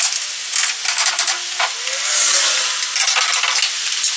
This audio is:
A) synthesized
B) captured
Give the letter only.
B